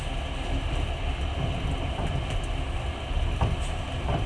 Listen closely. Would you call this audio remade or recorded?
recorded